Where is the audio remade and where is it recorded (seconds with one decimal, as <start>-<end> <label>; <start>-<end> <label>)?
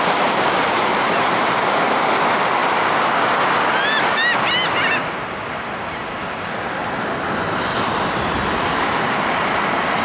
0.0-7.7 recorded; 7.7-9.2 remade; 9.2-10.0 recorded